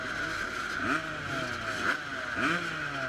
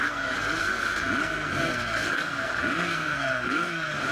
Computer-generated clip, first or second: second